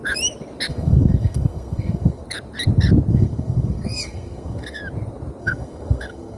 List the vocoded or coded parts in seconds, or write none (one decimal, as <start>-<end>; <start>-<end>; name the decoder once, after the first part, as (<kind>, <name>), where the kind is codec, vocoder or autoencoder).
0.7-2.2 (codec, SNAC); 3.1-4.8; 5.4-6.4